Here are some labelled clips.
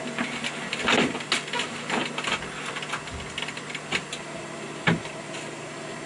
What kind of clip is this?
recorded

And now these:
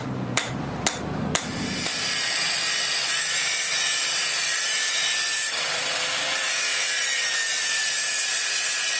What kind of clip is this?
remade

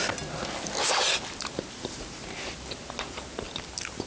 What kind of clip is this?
recorded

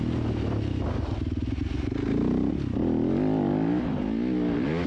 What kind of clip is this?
recorded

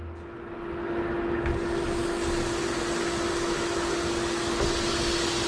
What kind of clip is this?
recorded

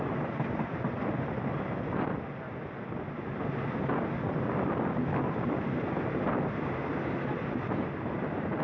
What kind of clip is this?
recorded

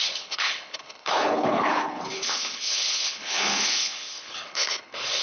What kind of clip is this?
remade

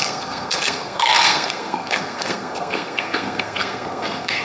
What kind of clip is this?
remade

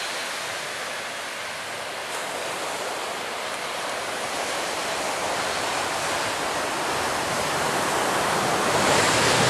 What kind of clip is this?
recorded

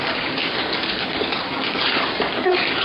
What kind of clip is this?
remade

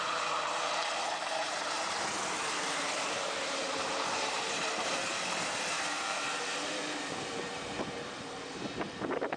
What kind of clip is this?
remade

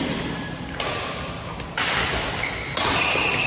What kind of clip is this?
recorded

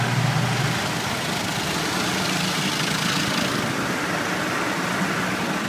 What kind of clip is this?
recorded